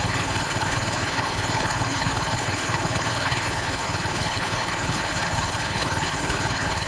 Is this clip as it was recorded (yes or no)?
no